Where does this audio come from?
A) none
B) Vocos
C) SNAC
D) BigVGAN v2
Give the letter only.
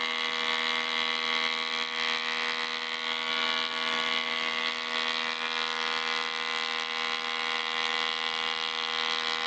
A